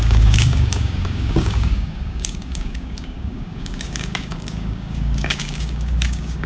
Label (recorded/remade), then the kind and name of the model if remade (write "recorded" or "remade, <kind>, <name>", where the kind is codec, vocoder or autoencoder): remade, codec, DAC